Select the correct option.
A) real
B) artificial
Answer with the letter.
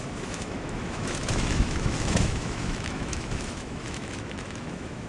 B